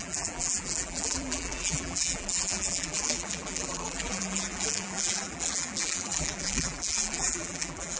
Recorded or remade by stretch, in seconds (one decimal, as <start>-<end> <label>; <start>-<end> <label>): 0.0-8.0 remade